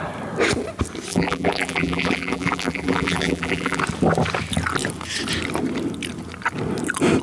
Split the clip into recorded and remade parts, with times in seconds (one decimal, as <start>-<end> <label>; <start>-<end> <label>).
0.0-1.1 recorded; 1.1-3.8 remade; 3.8-7.2 recorded